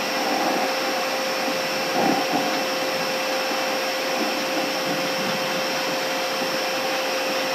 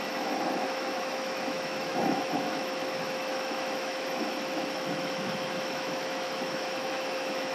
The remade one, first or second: second